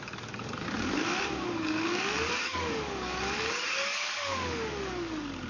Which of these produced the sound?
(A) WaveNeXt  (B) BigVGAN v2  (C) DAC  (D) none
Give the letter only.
C